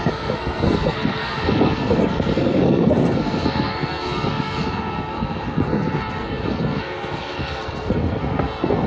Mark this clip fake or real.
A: fake